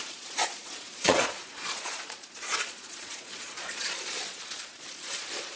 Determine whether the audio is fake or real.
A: fake